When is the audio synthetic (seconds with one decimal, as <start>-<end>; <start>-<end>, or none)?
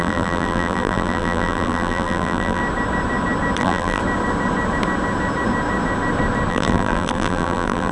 0.0-2.6; 3.6-4.0; 6.5-7.9